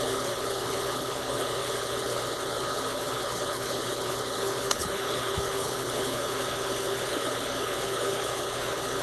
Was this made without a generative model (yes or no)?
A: no